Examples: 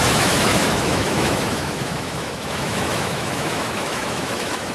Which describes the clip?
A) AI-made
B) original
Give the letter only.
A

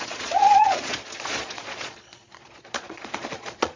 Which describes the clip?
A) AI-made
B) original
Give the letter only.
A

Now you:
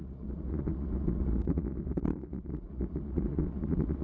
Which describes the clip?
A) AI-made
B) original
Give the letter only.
A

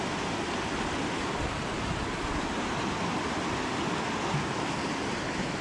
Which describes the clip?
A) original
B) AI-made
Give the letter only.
A